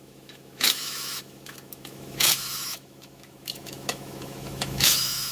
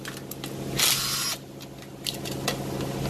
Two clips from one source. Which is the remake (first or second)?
first